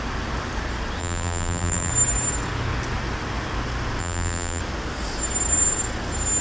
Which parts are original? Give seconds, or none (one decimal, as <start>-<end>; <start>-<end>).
0.0-1.0; 1.9-4.0; 4.6-6.4